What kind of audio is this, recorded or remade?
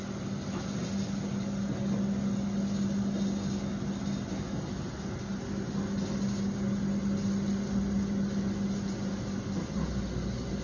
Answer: recorded